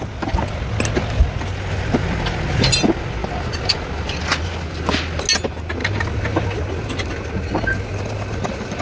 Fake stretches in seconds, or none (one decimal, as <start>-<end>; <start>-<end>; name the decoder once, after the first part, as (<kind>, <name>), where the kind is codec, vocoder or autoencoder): none

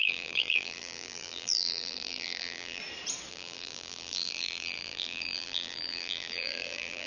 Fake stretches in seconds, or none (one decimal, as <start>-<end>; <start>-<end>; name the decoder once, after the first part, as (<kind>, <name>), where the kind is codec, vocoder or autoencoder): 0.0-2.8 (vocoder, BigVGAN v2); 3.3-7.1

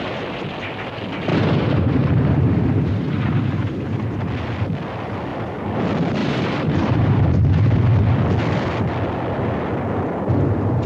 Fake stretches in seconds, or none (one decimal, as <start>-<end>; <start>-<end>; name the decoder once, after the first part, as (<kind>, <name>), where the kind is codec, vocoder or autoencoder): 1.3-4.3 (vocoder, BigVGAN v2); 6.2-7.2

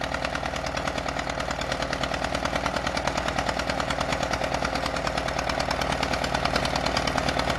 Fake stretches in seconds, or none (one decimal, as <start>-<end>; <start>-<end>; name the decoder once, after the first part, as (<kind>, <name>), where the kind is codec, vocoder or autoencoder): none

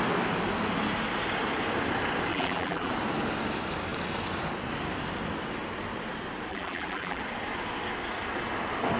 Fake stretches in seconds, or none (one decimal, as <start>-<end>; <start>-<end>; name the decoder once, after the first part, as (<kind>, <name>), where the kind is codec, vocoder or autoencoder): 2.3-2.9 (vocoder, BigVGAN v2); 6.5-7.2

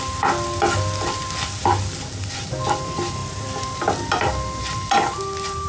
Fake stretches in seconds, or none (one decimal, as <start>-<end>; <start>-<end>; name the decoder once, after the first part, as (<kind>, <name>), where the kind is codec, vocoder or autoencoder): 3.2-4.1 (vocoder, BigVGAN v2)

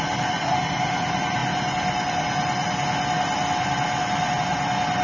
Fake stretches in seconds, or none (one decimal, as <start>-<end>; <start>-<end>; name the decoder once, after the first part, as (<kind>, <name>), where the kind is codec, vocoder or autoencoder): none

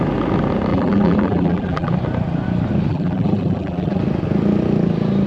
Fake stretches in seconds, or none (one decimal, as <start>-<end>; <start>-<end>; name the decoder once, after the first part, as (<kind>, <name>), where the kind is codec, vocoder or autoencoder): 0.7-1.9 (vocoder, BigVGAN v2); 2.9-4.0